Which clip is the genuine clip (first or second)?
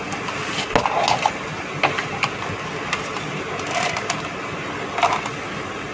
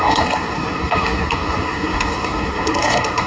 first